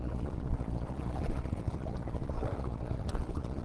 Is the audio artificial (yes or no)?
yes